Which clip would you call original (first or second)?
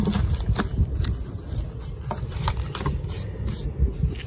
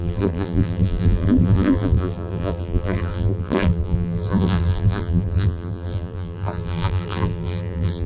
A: first